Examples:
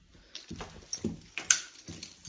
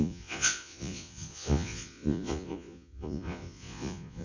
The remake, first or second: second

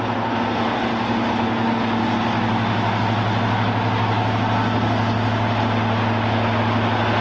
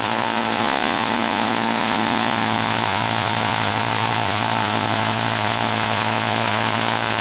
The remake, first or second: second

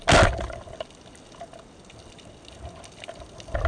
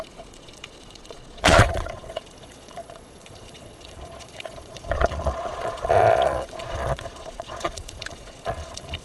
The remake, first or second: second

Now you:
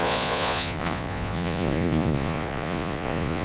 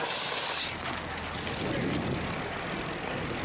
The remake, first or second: first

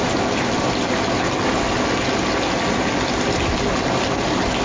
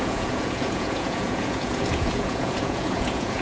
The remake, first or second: second